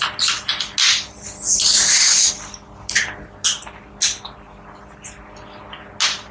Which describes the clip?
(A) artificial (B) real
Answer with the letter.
B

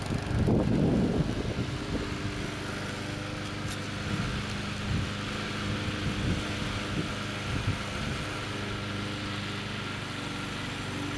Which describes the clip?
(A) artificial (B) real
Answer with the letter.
B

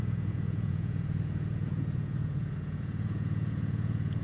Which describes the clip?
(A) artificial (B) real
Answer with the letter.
A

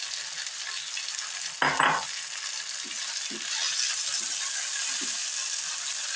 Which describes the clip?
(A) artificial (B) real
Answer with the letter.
B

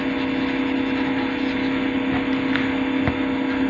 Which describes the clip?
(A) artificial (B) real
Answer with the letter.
B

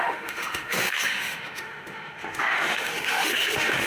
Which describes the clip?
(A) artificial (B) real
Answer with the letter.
A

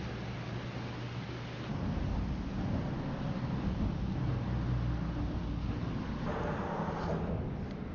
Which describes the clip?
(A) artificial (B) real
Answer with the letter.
B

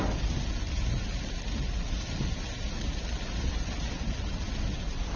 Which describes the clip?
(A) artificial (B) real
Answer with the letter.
B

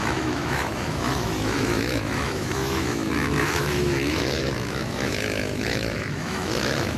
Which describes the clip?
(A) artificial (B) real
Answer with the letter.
A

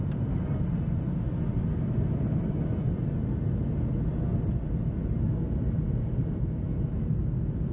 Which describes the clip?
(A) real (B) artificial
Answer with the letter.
A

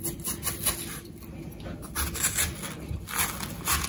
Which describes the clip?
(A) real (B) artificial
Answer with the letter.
A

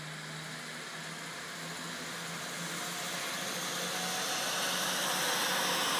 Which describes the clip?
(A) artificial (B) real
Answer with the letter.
B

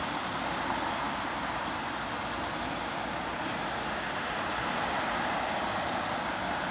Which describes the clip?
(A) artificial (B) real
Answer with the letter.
B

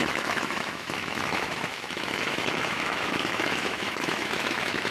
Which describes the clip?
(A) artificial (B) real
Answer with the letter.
A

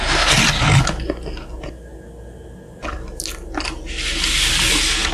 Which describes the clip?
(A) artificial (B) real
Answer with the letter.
B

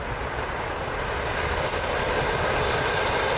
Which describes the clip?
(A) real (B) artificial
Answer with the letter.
A